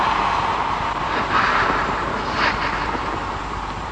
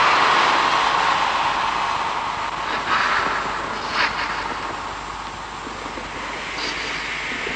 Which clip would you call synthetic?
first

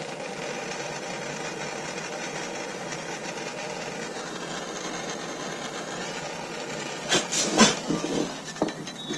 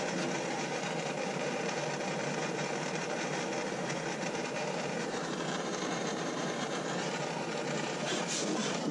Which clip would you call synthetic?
second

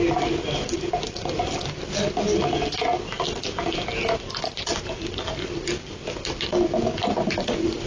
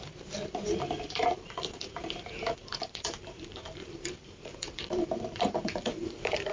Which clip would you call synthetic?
second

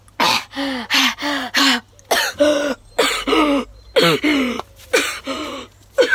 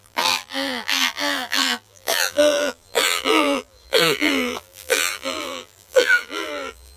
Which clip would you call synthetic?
second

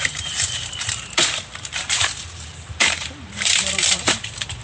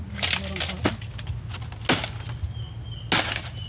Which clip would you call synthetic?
first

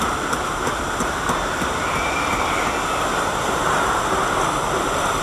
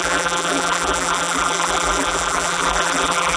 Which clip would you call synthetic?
second